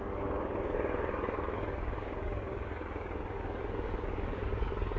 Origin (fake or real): fake